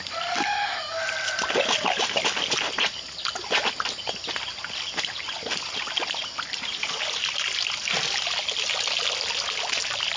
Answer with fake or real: real